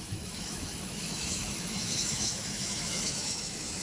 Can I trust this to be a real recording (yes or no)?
no